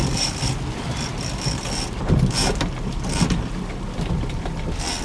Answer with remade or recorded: recorded